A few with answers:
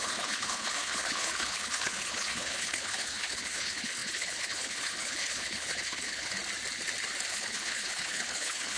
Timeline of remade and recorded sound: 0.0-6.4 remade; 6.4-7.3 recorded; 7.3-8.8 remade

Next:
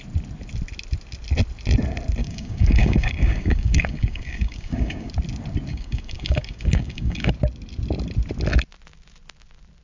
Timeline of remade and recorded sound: 0.0-2.2 recorded; 2.2-5.1 remade; 5.1-5.7 recorded; 5.7-7.3 remade; 7.3-9.8 recorded